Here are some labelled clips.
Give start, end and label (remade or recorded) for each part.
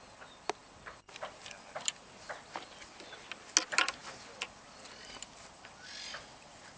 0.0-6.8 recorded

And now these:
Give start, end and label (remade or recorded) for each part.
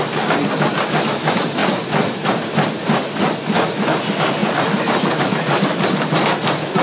0.0-6.8 recorded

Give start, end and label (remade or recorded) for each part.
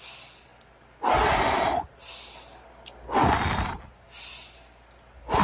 0.0-5.4 recorded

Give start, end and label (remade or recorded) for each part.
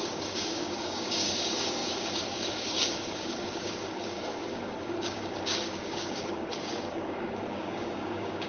0.0-8.5 remade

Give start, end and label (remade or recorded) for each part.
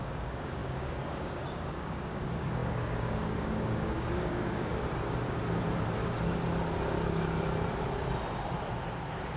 0.0-4.7 remade; 4.7-9.4 recorded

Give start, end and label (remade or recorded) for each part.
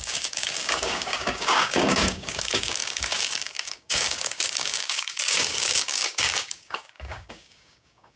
0.0-8.2 remade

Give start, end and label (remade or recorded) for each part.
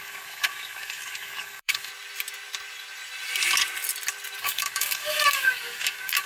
0.0-1.9 remade; 1.9-4.4 recorded; 4.4-6.3 remade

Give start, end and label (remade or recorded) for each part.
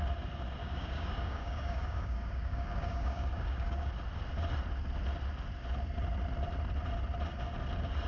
0.0-0.6 recorded; 0.6-3.9 remade; 3.9-8.1 recorded